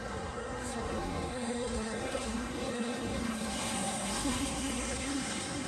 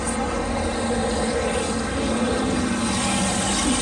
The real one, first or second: second